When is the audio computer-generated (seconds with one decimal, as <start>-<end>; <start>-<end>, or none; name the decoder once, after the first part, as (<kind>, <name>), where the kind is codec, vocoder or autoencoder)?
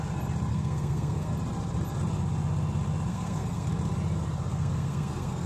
0.5-1.3 (codec, SNAC); 3.1-3.7; 4.5-5.5